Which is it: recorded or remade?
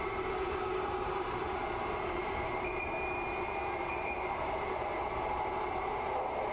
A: remade